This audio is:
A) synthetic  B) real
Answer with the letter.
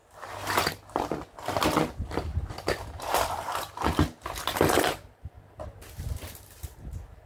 B